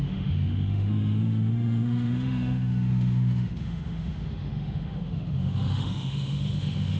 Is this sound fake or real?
fake